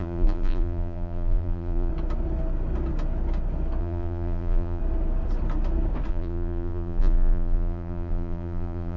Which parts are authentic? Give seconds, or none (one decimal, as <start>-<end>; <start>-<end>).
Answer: 1.9-3.8; 4.8-6.1